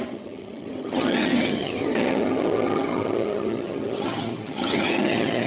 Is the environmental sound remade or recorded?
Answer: remade